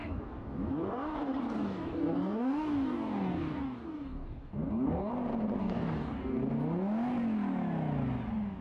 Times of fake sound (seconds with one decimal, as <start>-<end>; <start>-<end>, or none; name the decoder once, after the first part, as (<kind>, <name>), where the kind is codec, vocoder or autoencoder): 0.0-5.1 (codec, DAC); 5.6-6.4